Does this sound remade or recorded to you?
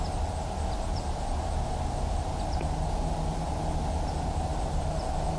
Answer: recorded